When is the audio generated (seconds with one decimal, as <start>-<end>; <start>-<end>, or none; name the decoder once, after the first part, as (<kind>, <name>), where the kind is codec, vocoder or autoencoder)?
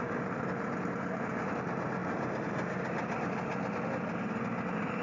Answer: none